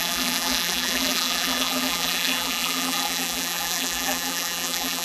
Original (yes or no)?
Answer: no